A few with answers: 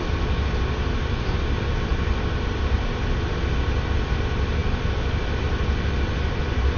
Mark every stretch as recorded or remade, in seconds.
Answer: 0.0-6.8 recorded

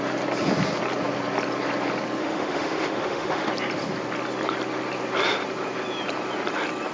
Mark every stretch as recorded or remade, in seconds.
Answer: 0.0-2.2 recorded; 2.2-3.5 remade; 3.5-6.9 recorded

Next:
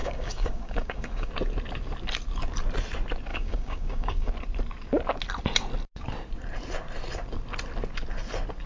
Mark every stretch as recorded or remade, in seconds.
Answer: 0.0-1.3 remade; 1.3-3.3 recorded; 3.3-4.3 remade; 4.3-8.7 recorded

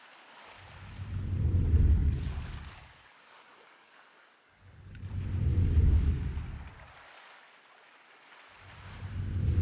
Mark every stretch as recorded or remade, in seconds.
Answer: 0.0-2.0 recorded; 2.0-5.1 remade; 5.1-5.5 recorded; 5.5-6.1 remade; 6.1-9.6 recorded